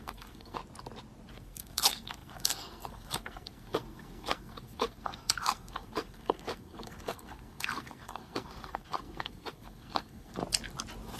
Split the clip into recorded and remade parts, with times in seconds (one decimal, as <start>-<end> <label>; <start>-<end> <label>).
0.0-0.6 remade; 0.6-1.3 recorded; 1.3-10.4 remade; 10.4-11.2 recorded